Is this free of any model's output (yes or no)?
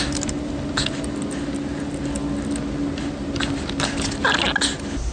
yes